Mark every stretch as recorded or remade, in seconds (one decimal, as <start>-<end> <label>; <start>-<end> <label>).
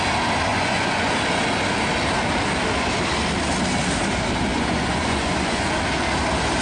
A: 0.0-0.5 recorded; 0.5-1.1 remade; 1.1-4.5 recorded; 4.5-5.7 remade; 5.7-6.6 recorded